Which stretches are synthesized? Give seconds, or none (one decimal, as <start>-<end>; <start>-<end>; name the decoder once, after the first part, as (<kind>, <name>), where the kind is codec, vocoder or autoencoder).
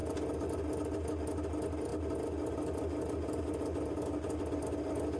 none